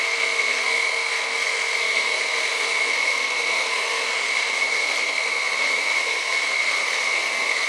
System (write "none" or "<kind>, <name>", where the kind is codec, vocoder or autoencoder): codec, SNAC